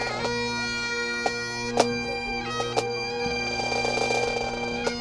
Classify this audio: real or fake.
real